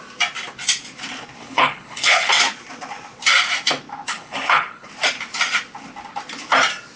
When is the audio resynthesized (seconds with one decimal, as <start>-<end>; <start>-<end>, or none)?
1.4-2.3; 4.1-4.9